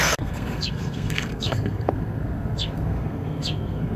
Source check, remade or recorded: remade